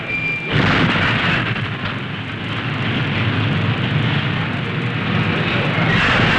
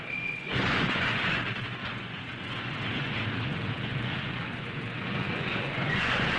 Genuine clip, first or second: first